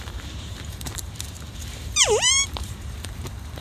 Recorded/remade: remade